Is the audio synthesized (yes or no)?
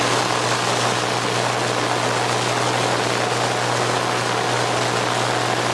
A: no